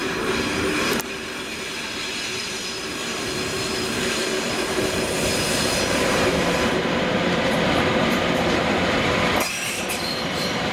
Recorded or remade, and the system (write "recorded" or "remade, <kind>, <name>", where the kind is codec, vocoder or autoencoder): remade, vocoder, BigVGAN v2